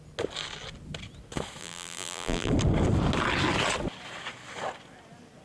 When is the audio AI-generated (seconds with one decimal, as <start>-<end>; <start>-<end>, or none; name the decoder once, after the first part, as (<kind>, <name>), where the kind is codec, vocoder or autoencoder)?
1.6-2.5 (vocoder, BigVGAN v2)